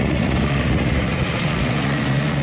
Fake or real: fake